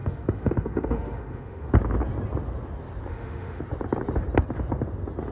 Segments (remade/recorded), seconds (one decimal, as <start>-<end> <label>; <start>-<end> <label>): 0.0-1.7 remade; 1.7-3.1 recorded; 3.1-3.6 remade; 3.6-5.3 recorded